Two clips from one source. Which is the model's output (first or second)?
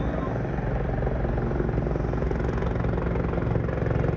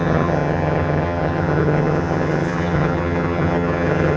second